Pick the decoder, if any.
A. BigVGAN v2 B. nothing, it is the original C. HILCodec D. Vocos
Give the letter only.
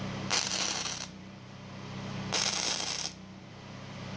A